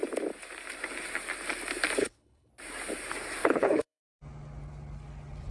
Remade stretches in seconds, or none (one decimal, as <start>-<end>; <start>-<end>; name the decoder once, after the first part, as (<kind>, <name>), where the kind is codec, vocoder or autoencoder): 2.0-2.5 (codec, HILCodec); 3.4-4.0